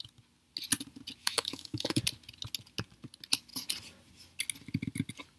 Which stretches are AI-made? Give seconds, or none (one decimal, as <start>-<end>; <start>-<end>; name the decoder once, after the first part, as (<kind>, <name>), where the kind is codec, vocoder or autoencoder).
1.2-2.0 (autoencoder, DAC-VAE)